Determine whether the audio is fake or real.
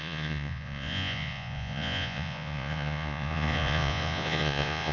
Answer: fake